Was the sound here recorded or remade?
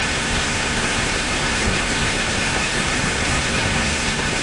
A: remade